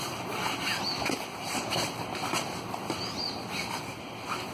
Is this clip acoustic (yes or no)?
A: yes